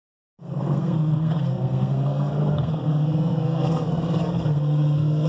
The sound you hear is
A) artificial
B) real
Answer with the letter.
A